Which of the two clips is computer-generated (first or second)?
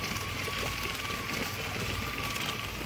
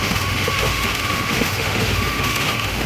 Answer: second